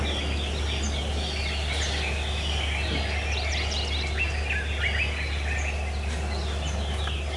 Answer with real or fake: real